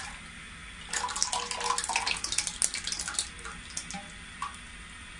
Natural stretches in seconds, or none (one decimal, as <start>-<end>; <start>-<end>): 0.0-5.2